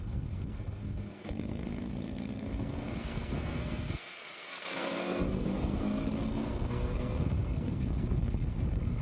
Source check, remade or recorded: remade